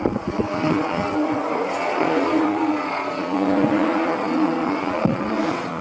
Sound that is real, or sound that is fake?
fake